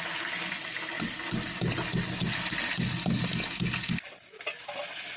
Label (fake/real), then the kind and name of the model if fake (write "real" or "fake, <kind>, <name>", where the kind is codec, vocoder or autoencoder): real